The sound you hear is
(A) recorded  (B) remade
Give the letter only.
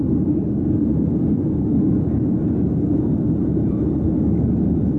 A